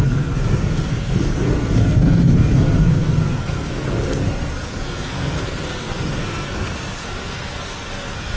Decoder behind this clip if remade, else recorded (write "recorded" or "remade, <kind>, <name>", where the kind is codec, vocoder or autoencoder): remade, codec, SNAC